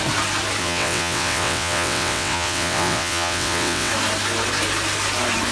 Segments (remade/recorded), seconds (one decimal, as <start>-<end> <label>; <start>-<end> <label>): 0.0-0.6 recorded; 0.6-3.9 remade; 3.9-5.5 recorded